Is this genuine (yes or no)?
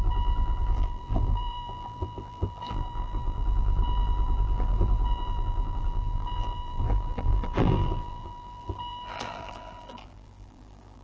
no